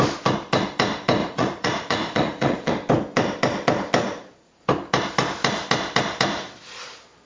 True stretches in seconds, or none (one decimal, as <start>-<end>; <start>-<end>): 0.0-1.2; 2.7-4.0; 4.6-7.3